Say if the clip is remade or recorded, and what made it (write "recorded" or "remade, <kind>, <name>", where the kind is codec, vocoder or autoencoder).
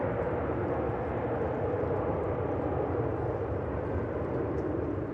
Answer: recorded